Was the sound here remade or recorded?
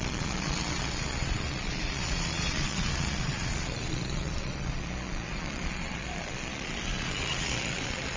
remade